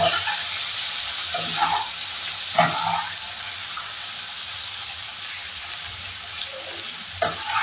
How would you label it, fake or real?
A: real